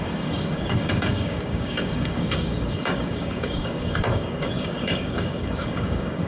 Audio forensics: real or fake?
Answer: fake